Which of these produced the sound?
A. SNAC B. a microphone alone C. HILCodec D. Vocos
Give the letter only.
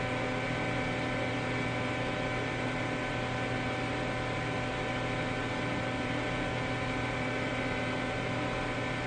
B